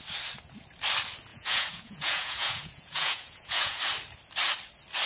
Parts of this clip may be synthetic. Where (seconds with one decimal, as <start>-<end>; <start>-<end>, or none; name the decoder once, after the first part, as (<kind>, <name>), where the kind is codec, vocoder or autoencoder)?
1.3-3.8 (vocoder, Vocos)